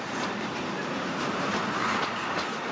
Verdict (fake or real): fake